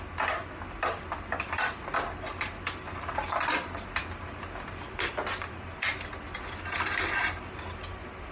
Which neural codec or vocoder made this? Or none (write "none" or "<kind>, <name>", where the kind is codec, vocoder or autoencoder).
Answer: none